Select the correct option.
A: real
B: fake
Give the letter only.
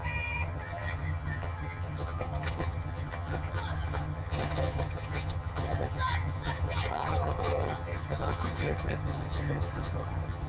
B